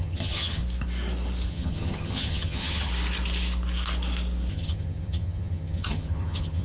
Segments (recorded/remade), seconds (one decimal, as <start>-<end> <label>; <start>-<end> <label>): 0.0-0.6 remade; 0.6-1.5 recorded; 1.5-2.9 remade; 2.9-4.5 recorded; 4.5-6.6 remade